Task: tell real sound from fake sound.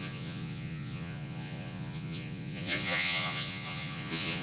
fake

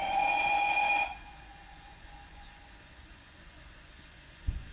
fake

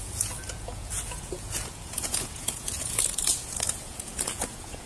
fake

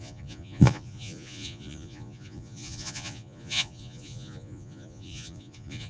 fake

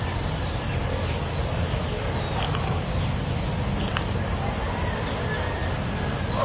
real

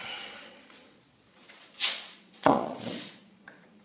fake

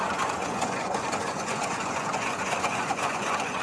fake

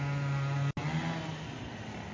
real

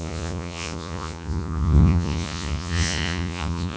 fake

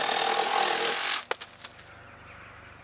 real